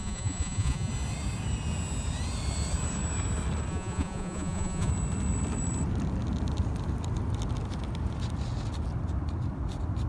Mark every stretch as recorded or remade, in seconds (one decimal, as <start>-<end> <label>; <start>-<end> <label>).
0.0-0.9 remade; 0.9-3.7 recorded; 3.7-4.9 remade; 4.9-10.1 recorded